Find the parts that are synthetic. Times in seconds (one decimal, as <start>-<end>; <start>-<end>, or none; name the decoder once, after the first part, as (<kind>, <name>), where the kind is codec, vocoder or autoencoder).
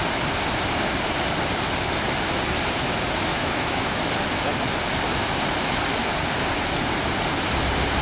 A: 3.3-4.1 (autoencoder, DAC-VAE)